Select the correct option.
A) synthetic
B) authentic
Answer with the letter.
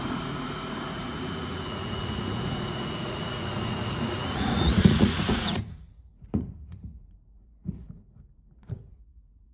A